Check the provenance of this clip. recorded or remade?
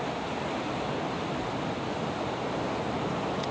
recorded